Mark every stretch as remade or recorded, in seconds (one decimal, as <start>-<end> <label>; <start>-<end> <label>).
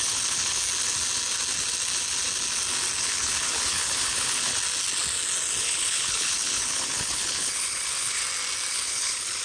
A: 0.0-0.6 remade; 0.6-3.0 recorded; 3.0-4.5 remade; 4.5-5.6 recorded; 5.6-8.2 remade; 8.2-8.7 recorded; 8.7-9.4 remade